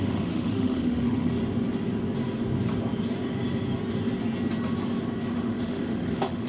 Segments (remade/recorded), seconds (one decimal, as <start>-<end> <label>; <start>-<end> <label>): 0.0-1.4 remade; 1.4-5.3 recorded; 5.3-6.5 remade